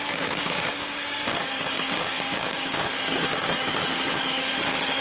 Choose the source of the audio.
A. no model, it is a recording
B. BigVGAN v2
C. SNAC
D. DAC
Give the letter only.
D